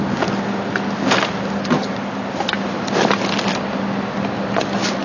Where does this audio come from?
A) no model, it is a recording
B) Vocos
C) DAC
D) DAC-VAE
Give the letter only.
A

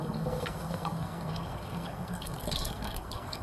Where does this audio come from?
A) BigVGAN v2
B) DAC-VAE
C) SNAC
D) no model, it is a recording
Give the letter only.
C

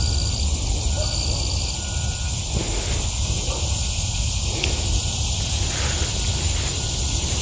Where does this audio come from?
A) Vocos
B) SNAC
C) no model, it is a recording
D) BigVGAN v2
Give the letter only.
C